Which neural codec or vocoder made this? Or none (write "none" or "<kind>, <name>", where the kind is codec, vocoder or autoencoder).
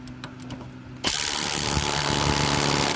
none